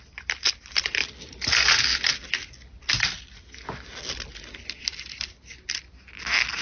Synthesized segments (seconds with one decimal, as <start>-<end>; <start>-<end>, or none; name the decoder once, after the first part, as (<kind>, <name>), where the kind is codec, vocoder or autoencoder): none